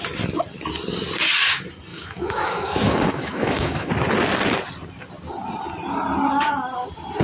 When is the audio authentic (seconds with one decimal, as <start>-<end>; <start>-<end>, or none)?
0.0-1.9; 3.9-7.2